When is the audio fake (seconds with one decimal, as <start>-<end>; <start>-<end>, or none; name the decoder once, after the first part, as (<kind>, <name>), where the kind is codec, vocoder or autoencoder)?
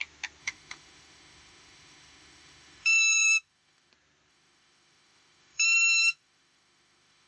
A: 0.4-3.9 (autoencoder, DAC-VAE); 4.3-7.3